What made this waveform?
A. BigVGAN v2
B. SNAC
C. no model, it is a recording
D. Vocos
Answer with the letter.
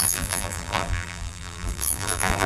A